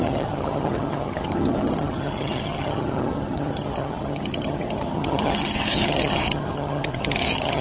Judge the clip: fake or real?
fake